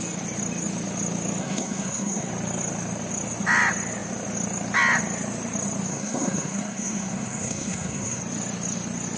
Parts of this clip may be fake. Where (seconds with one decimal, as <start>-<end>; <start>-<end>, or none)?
1.4-2.3; 5.9-8.2